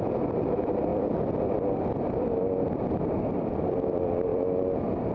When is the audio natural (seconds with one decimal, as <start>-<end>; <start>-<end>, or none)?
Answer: 4.3-5.1